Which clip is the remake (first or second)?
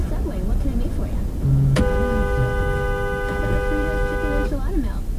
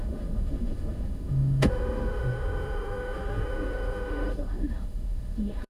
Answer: second